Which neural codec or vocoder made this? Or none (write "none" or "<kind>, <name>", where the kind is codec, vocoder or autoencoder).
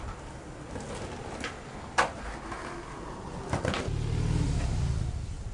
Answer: none